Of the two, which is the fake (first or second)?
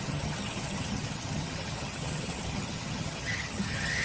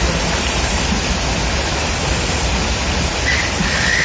first